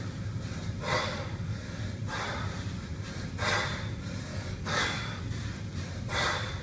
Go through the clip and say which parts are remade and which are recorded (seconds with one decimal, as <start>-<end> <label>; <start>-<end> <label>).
0.0-1.0 recorded; 1.0-1.8 remade; 1.8-4.3 recorded; 4.3-5.2 remade; 5.2-6.6 recorded